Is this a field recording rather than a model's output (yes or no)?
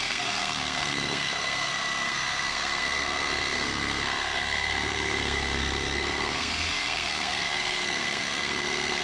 no